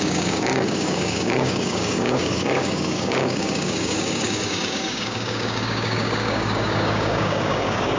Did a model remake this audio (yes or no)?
yes